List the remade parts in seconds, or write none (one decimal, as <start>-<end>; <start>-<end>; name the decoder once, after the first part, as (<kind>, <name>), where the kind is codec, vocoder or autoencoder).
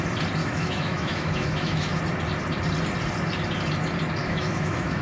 0.4-2.0 (autoencoder, DAC-VAE); 4.2-5.0